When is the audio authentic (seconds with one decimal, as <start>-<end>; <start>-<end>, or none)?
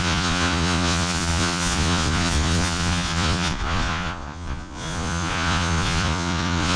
none